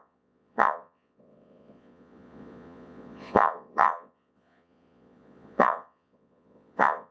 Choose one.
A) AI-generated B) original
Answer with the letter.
A